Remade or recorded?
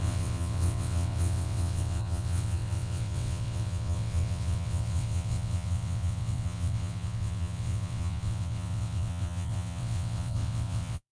remade